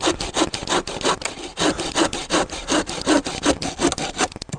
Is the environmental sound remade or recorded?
recorded